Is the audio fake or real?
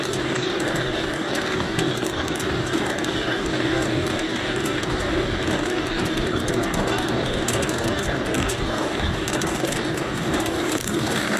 fake